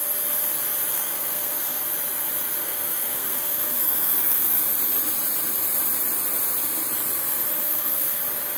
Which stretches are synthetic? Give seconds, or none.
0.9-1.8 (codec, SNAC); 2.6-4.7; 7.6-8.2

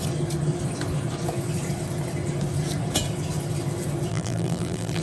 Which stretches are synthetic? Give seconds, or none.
4.1-5.0 (vocoder, BigVGAN v2)

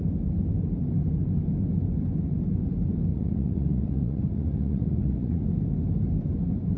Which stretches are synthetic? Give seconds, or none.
3.1-5.4 (vocoder, Vocos)

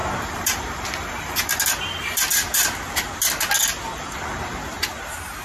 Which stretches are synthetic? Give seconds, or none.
0.0-0.9 (vocoder, BigVGAN v2); 2.3-3.2

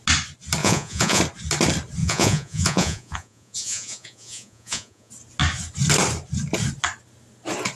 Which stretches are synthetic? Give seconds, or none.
0.6-1.2 (vocoder, Vocos); 2.0-5.1

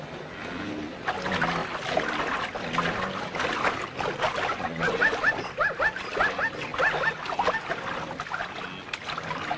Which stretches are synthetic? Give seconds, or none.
4.5-5.0 (vocoder, Vocos)

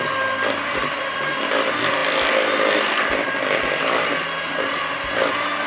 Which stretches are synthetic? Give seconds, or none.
none

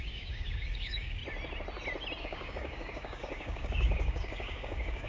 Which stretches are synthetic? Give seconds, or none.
0.0-1.2 (codec, DAC); 2.2-5.1